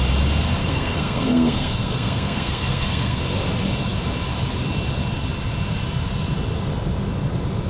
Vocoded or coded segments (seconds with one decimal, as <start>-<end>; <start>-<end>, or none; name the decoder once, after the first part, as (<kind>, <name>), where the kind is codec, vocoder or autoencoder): 0.6-3.2 (codec, SNAC)